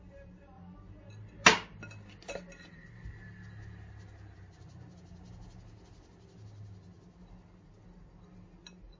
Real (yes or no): yes